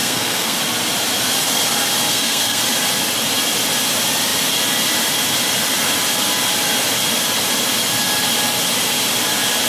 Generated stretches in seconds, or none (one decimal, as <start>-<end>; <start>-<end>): 0.0-0.6; 2.1-2.6